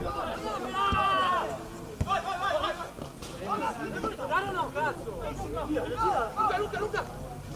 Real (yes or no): yes